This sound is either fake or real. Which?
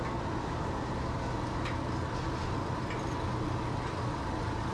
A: real